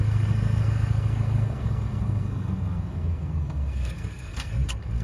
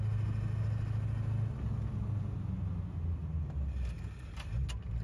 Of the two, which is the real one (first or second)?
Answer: second